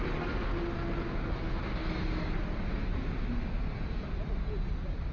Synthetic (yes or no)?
no